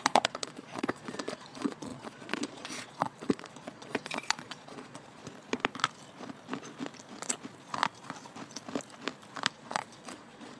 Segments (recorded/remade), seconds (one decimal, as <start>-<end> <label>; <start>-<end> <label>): 0.0-5.2 remade; 5.2-9.5 recorded; 9.5-10.6 remade